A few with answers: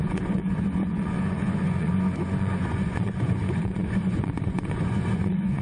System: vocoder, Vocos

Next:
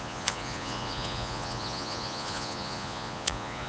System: vocoder, Vocos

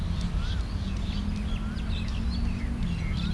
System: none